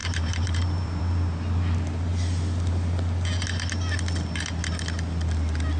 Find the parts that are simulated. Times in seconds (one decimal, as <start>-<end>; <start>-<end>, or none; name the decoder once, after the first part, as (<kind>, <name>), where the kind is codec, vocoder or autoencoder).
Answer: 0.0-1.0 (vocoder, BigVGAN v2)